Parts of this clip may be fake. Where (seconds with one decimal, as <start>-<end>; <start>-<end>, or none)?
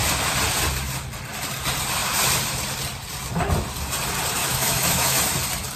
4.4-5.2